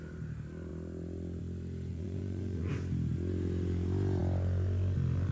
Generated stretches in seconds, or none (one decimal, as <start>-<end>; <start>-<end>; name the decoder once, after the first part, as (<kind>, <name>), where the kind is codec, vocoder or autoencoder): 1.9-2.7 (vocoder, Vocos)